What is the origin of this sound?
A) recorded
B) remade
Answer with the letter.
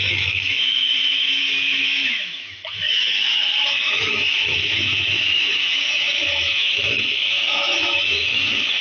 B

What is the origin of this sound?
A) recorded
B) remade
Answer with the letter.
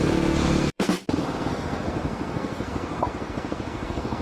B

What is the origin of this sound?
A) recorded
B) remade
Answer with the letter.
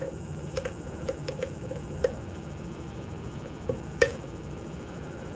B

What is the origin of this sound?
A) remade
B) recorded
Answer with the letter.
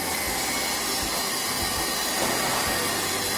B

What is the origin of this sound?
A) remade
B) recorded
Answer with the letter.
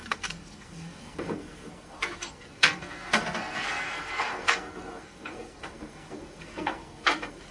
A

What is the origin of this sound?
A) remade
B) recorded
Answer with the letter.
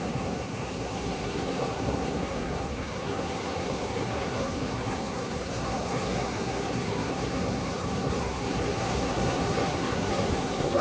A